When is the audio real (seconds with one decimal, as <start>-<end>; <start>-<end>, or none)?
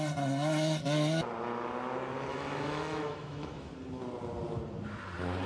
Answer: 0.0-2.3; 3.7-5.5